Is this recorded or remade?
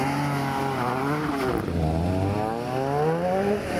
recorded